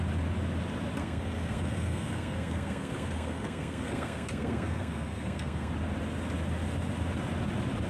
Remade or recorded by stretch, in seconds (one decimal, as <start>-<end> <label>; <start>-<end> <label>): 0.0-1.0 recorded; 1.0-5.7 remade; 5.7-7.9 recorded